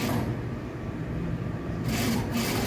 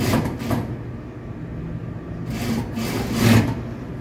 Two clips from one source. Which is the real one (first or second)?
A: second